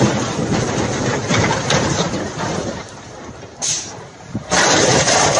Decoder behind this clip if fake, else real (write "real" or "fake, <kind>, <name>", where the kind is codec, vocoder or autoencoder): fake, vocoder, BigVGAN v2